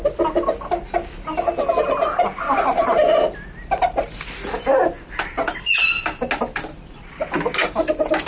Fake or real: real